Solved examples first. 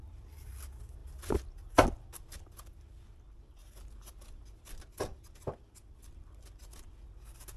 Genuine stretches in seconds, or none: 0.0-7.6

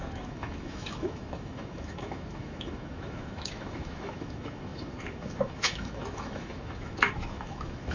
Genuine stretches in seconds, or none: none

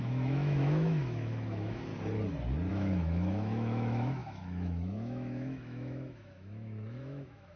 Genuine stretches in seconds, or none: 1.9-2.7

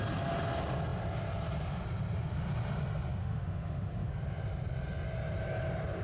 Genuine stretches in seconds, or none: 0.0-3.2; 4.1-6.0

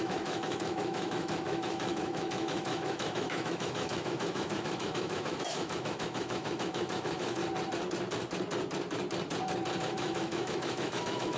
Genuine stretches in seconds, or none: 7.4-9.8

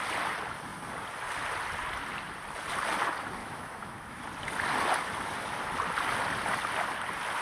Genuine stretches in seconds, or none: 0.0-3.4; 4.2-7.4